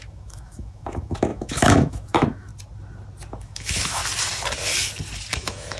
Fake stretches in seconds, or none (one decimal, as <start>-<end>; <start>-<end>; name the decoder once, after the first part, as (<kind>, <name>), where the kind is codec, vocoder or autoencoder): 0.0-2.5 (autoencoder, DAC-VAE); 3.4-4.0; 5.3-5.8